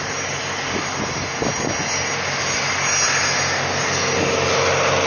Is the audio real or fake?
real